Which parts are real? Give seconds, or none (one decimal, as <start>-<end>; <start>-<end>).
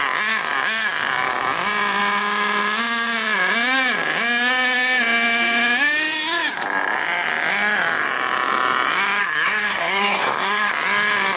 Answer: 0.0-9.2; 10.7-11.4